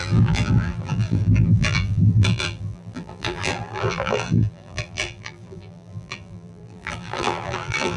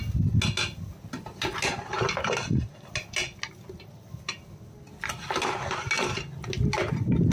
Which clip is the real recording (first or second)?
second